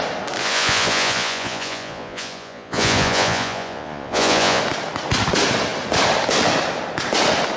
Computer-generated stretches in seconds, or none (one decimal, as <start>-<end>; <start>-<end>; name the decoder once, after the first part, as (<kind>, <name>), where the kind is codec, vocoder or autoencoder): 0.4-4.6 (vocoder, Vocos)